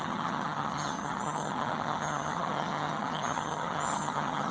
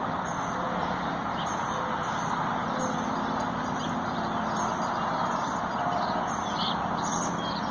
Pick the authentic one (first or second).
second